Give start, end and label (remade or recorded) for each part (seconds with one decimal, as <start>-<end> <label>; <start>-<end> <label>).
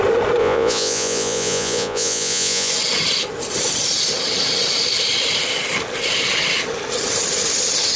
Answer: 0.0-0.4 recorded; 0.4-2.7 remade; 2.7-8.0 recorded